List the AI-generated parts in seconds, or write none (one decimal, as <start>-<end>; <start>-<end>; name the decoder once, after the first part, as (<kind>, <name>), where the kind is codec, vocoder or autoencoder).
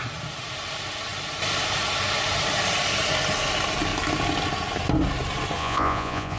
5.6-6.4 (vocoder, Vocos)